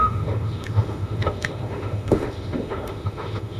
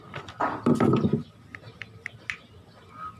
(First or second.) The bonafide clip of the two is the second